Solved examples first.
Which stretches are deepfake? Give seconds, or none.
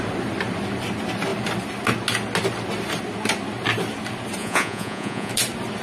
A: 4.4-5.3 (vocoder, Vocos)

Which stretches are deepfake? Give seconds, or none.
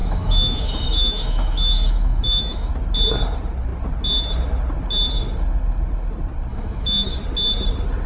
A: 0.0-2.7 (autoencoder, DAC-VAE); 6.5-7.2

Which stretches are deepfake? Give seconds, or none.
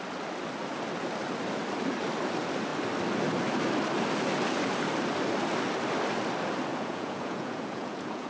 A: 6.7-8.3 (vocoder, Vocos)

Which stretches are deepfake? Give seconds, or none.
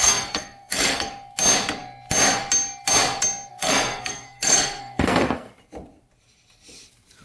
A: 0.0-1.1 (codec, SNAC); 3.5-5.5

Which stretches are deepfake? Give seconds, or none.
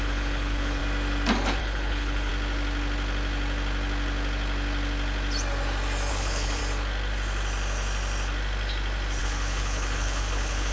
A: 0.0-0.8 (codec, HILCodec); 1.6-2.3; 6.1-6.6; 9.2-10.7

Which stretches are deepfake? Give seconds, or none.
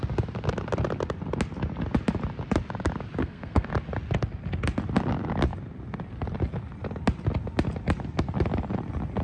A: 3.2-3.7 (codec, SNAC)